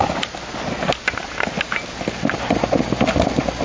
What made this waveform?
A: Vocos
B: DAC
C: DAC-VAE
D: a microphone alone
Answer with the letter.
D